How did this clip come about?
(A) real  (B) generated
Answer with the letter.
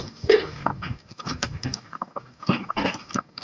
B